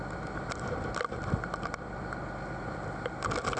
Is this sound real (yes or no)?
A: yes